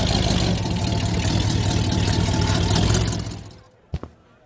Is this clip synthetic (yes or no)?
no